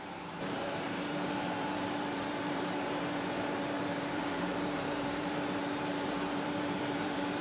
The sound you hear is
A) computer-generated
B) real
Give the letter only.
A